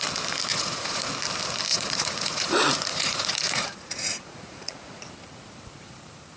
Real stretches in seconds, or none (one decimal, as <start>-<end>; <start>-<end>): 0.0-0.5; 1.1-1.7; 5.0-6.4